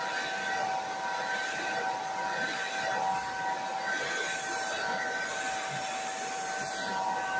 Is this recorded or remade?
recorded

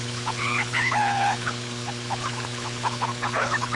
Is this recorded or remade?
remade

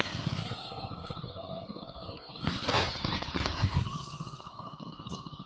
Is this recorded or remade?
remade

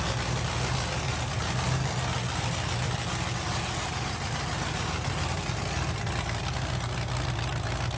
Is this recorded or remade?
recorded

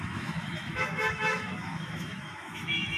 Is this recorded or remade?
remade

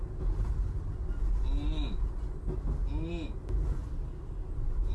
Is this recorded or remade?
recorded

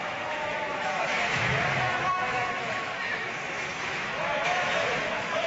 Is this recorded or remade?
remade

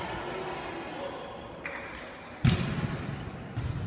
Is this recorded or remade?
recorded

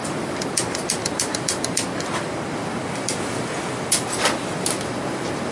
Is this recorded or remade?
remade